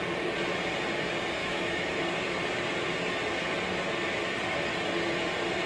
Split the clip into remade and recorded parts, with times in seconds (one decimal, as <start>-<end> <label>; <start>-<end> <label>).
0.0-1.4 recorded; 1.4-2.0 remade; 2.0-5.7 recorded